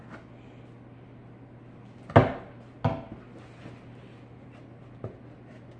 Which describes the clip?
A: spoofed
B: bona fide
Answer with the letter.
B